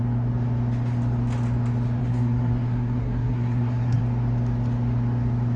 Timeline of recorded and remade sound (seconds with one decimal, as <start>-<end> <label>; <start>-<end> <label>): 0.0-2.0 recorded; 2.0-4.0 remade; 4.0-5.6 recorded